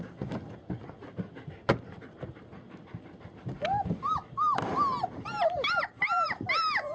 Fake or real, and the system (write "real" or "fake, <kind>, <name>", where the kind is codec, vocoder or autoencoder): real